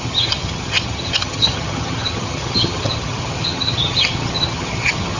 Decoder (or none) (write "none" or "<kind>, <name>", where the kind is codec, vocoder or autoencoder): vocoder, HiFi-GAN